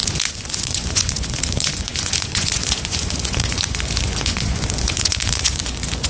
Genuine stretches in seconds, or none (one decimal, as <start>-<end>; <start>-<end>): none